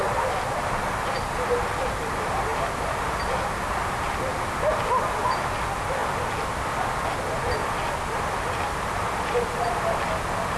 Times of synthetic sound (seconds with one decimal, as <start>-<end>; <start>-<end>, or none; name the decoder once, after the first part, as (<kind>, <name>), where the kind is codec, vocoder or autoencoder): none